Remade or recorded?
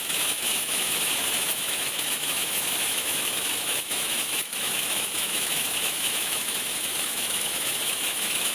remade